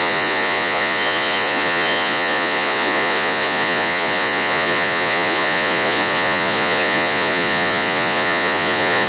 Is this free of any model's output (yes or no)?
no